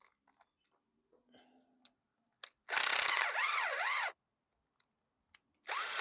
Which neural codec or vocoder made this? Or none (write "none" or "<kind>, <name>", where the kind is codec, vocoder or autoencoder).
none